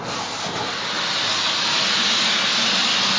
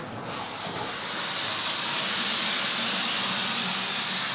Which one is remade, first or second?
second